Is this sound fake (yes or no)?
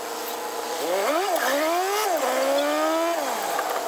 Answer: no